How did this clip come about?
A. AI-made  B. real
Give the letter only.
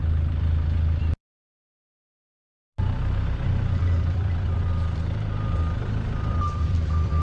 A